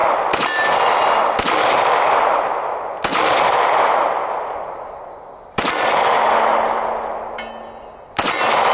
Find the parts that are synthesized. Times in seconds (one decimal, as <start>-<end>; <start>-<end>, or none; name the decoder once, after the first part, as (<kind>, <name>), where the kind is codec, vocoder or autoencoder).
none